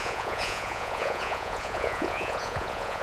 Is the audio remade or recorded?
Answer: remade